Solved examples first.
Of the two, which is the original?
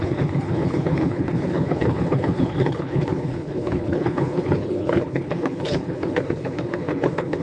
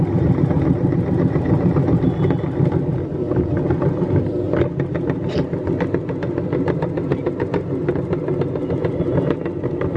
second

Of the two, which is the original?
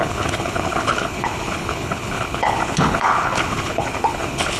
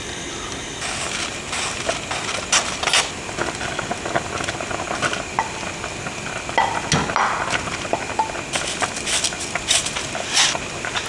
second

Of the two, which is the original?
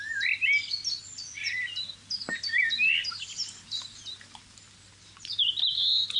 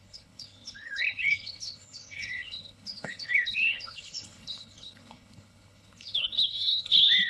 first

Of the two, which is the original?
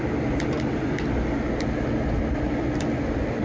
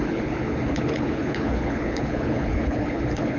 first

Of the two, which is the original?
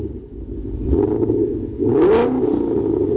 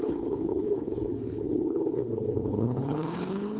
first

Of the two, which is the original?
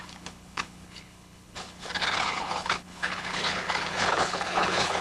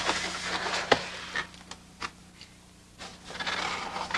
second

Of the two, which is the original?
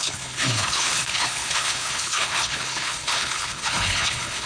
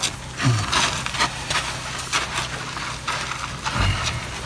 second